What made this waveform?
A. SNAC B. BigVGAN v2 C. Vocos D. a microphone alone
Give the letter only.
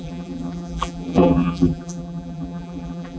B